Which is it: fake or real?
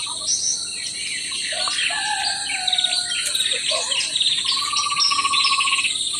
real